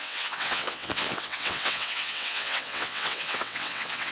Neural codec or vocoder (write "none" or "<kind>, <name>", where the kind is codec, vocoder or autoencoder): vocoder, WaveNeXt